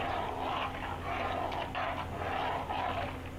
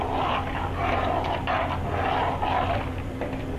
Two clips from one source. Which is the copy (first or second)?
second